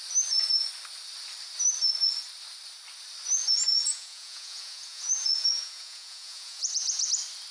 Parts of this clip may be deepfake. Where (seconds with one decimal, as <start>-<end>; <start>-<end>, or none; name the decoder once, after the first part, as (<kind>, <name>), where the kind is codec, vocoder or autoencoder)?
3.7-7.1 (vocoder, Vocos)